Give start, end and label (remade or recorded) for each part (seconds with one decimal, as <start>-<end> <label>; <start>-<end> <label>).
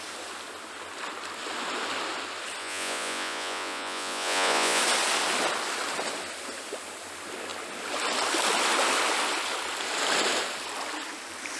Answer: 0.0-2.6 recorded; 2.6-4.8 remade; 4.8-11.6 recorded